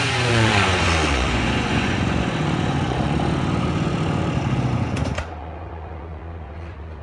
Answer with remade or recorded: remade